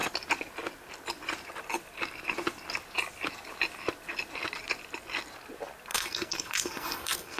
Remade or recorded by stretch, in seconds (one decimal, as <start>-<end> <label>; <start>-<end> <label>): 0.0-5.9 recorded; 5.9-7.4 remade

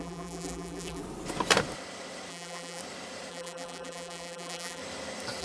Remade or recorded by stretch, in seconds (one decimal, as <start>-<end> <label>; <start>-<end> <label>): 0.0-1.0 remade; 1.0-2.3 recorded; 2.3-2.8 remade; 2.8-3.3 recorded; 3.3-4.8 remade; 4.8-5.4 recorded